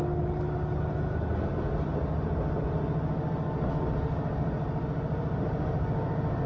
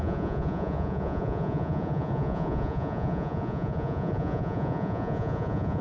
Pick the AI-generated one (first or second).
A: second